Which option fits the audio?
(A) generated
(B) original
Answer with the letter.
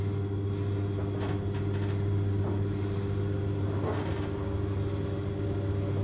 B